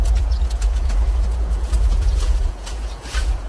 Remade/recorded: remade